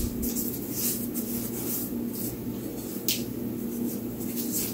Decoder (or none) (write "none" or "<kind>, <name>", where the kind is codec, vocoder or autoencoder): none